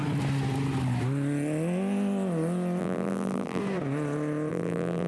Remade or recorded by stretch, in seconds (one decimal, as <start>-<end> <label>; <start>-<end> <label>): 0.0-2.8 recorded; 2.8-3.6 remade; 3.6-4.5 recorded; 4.5-5.1 remade